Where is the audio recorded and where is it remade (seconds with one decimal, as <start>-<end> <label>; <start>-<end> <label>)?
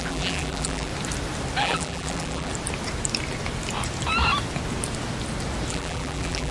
0.0-0.9 remade; 0.9-1.6 recorded; 1.6-2.5 remade; 2.5-5.7 recorded; 5.7-6.5 remade